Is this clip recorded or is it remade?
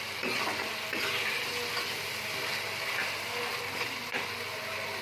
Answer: recorded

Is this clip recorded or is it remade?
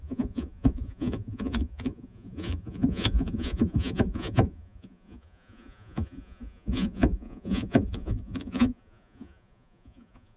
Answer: remade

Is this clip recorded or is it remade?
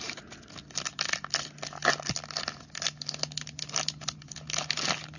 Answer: recorded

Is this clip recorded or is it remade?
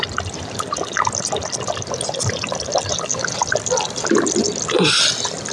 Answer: recorded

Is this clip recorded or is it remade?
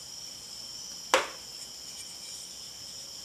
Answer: recorded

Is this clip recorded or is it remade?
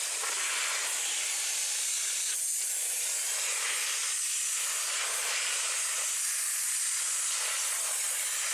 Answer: recorded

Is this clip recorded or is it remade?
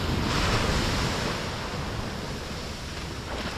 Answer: recorded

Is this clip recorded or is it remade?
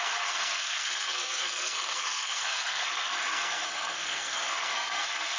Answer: remade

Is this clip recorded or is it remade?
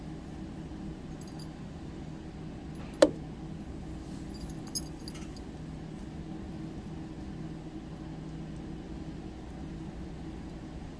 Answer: recorded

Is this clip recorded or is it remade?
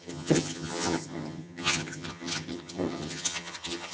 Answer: remade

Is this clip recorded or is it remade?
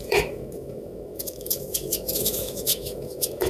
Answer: remade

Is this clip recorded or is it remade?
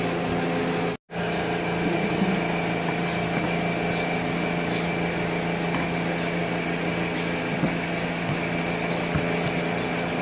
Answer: recorded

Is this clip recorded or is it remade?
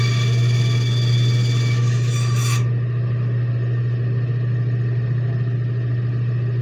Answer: recorded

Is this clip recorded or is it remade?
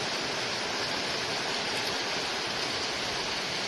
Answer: recorded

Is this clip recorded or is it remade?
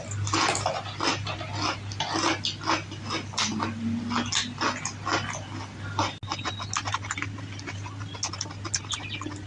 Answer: recorded